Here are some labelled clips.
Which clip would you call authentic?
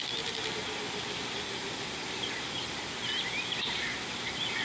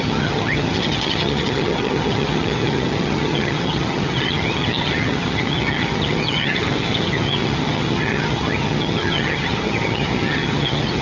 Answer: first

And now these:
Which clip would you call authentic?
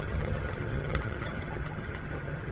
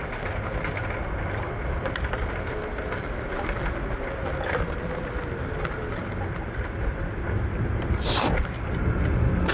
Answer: second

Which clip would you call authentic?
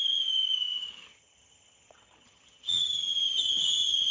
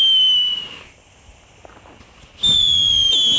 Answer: second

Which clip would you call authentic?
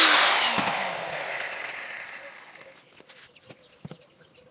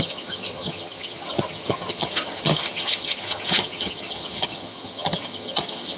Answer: first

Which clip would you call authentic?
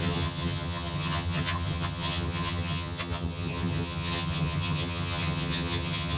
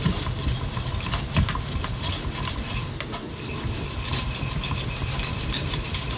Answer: second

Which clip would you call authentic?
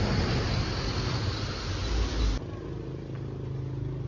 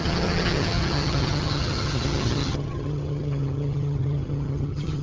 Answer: first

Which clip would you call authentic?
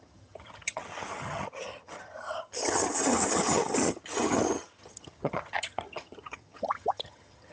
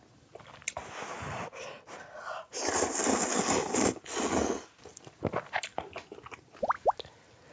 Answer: second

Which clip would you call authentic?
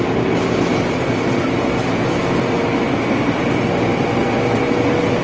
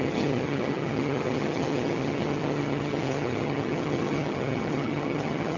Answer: first